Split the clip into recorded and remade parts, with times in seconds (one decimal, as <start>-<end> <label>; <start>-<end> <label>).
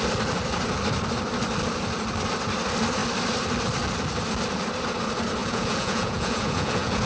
0.0-5.4 recorded; 5.4-7.1 remade